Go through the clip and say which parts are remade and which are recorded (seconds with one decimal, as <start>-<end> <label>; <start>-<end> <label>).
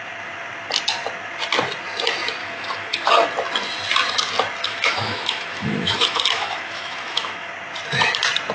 0.0-2.4 recorded; 2.4-3.1 remade; 3.1-4.6 recorded; 4.6-7.5 remade; 7.5-8.5 recorded